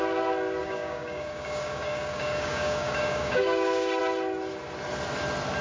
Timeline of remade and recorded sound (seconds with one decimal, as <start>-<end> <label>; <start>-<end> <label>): 0.0-0.6 recorded; 0.6-4.0 remade; 4.0-5.6 recorded